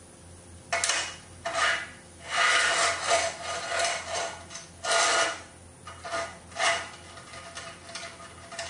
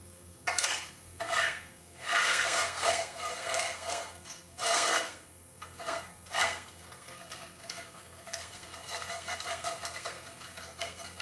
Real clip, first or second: first